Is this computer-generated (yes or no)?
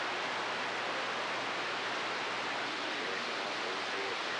no